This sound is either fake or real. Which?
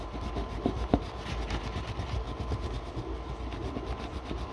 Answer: real